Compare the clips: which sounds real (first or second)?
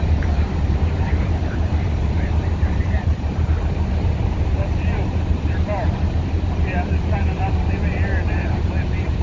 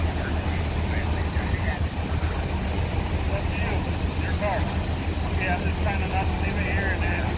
second